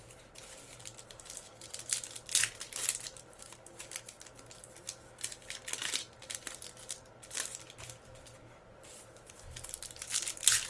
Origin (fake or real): real